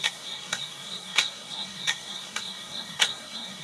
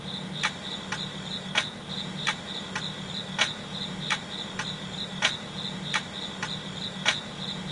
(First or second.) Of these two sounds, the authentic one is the second